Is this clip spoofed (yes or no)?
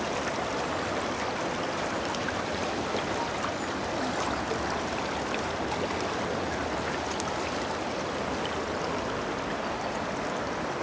no